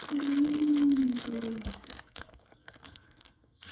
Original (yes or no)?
no